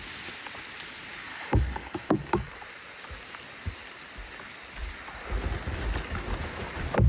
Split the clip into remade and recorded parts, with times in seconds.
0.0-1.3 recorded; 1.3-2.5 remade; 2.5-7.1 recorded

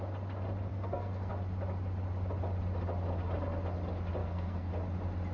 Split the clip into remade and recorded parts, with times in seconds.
0.0-0.7 recorded; 0.7-1.3 remade; 1.3-4.2 recorded; 4.2-4.7 remade; 4.7-5.3 recorded

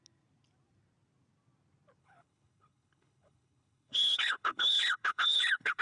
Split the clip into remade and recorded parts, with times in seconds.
0.0-2.0 recorded; 2.0-5.8 remade

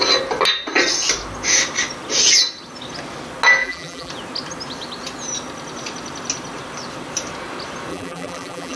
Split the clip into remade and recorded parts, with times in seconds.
0.0-3.6 recorded; 3.6-4.1 remade; 4.1-7.9 recorded; 7.9-8.8 remade

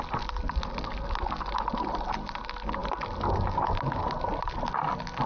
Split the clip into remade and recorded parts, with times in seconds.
0.0-5.3 recorded

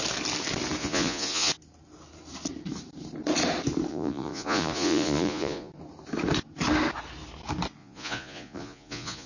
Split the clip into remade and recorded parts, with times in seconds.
0.0-0.8 recorded; 0.8-1.5 remade; 1.5-3.9 recorded; 3.9-5.7 remade; 5.7-7.8 recorded; 7.8-9.3 remade

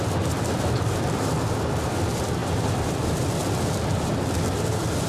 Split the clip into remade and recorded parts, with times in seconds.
0.0-5.1 remade

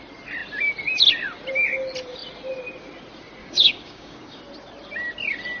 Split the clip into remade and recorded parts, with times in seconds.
0.0-3.4 recorded; 3.4-4.4 remade; 4.4-5.6 recorded